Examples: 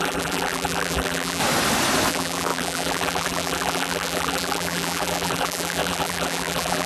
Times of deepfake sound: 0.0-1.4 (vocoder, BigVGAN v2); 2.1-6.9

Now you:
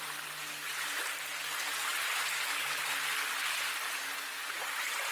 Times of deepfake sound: none

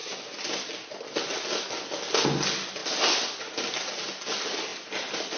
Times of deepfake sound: none